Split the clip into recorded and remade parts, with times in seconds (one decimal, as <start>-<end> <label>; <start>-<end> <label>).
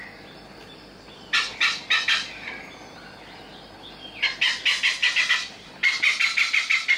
0.0-7.0 recorded